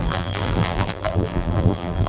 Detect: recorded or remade remade